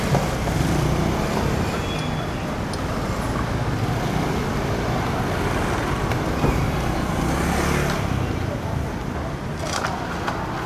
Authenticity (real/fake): real